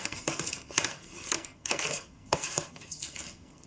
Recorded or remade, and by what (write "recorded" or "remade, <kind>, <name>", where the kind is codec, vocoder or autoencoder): remade, codec, SNAC